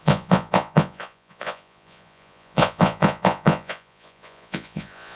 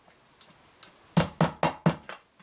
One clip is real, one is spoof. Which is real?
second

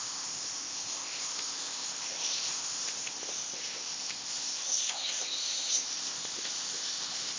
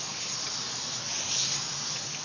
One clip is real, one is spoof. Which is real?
second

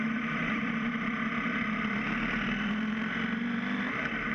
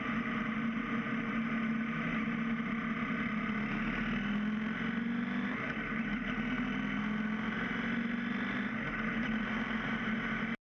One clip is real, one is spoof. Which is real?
second